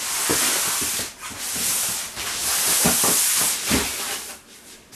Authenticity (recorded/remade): recorded